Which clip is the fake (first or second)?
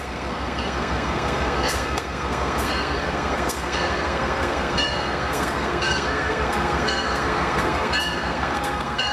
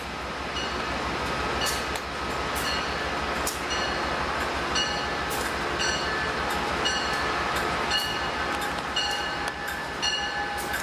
first